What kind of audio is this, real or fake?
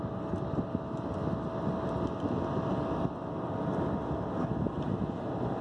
real